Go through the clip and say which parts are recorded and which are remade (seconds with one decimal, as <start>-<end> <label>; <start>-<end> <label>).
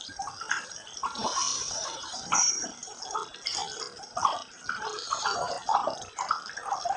0.0-1.5 recorded; 1.5-3.0 remade; 3.0-7.0 recorded